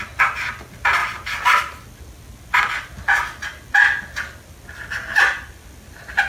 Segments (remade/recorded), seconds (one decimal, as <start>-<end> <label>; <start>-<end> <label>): 0.0-6.3 recorded